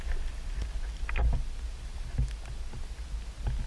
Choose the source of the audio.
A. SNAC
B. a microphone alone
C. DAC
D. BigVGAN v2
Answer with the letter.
B